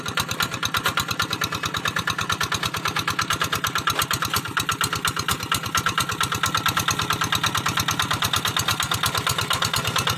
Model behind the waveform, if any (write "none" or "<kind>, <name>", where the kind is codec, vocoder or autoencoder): none